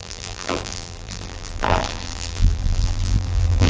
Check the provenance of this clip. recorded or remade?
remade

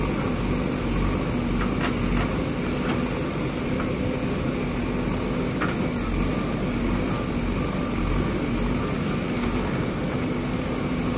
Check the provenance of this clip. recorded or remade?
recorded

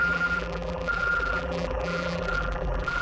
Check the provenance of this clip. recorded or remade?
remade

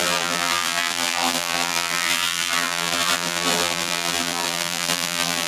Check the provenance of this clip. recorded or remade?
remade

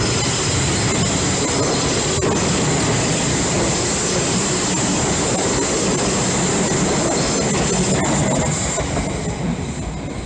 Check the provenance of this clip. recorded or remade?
recorded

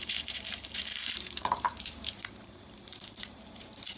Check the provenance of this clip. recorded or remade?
remade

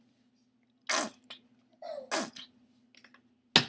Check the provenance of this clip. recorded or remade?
recorded